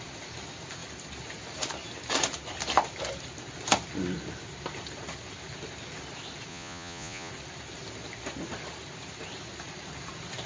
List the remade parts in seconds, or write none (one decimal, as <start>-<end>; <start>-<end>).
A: 6.5-7.3